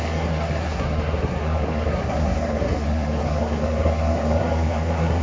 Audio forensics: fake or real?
fake